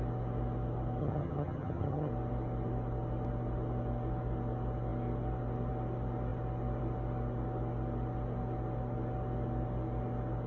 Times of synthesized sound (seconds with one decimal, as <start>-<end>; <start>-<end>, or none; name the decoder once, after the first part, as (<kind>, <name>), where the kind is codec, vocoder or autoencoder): 1.0-2.1 (vocoder, HiFi-GAN)